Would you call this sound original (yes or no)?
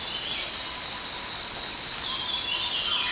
yes